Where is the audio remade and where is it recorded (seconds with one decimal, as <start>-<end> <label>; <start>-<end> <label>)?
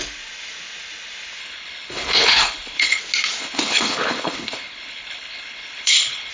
0.0-1.4 recorded; 1.4-3.0 remade; 3.0-3.4 recorded; 3.4-6.3 remade